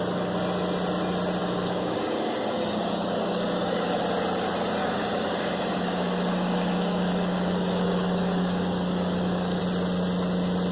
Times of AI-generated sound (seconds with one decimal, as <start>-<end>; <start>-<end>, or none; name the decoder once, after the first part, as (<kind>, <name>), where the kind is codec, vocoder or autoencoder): 1.4-4.0 (codec, DAC); 4.8-9.6